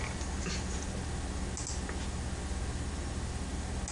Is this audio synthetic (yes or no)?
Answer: no